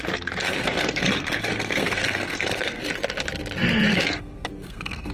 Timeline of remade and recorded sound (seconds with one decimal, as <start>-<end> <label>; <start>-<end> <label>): 0.0-0.4 recorded; 0.4-2.8 remade; 2.8-3.9 recorded; 3.9-5.1 remade